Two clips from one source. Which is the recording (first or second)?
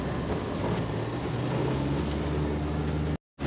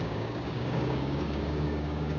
first